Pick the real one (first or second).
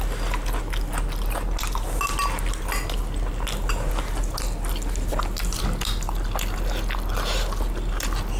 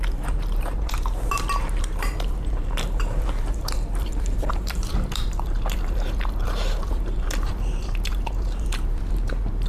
first